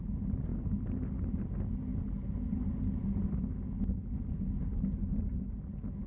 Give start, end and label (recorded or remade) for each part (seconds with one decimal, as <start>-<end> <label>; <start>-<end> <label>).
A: 0.0-6.1 recorded

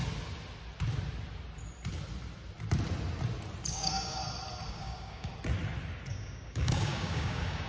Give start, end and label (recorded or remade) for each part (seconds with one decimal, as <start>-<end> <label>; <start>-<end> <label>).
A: 0.0-3.7 recorded; 3.7-4.2 remade; 4.2-4.7 recorded; 4.7-5.3 remade; 5.3-6.1 recorded; 6.1-7.7 remade